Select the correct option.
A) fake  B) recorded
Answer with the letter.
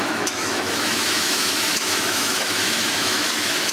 A